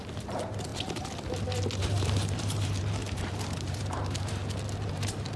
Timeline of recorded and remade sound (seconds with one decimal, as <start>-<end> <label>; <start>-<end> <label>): 0.0-0.7 remade; 0.7-1.8 recorded; 1.8-4.4 remade; 4.4-4.9 recorded; 4.9-5.4 remade